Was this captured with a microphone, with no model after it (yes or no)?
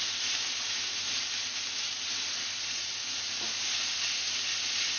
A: yes